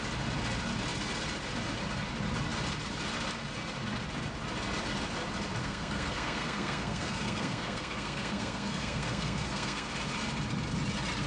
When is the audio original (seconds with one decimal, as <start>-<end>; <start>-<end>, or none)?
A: 0.0-5.6; 9.9-11.3